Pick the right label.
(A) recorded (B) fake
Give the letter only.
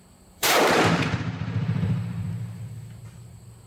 B